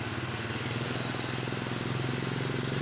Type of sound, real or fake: real